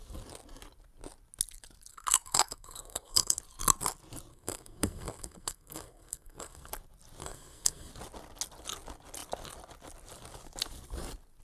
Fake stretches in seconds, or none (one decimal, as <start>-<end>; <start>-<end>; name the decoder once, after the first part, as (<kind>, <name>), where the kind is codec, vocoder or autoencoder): 1.9-3.4 (codec, SNAC); 4.3-6.7; 7.2-7.9